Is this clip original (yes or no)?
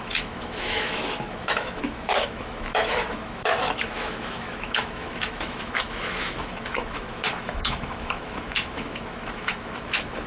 no